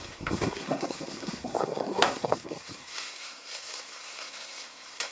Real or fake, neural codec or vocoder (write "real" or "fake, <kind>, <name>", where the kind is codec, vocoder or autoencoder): fake, codec, SNAC